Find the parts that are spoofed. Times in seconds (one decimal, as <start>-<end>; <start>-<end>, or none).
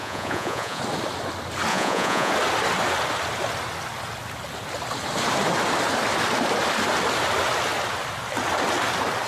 0.0-0.8; 1.7-2.3